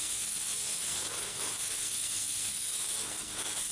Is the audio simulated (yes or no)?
yes